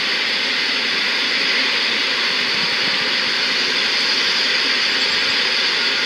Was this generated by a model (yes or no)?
no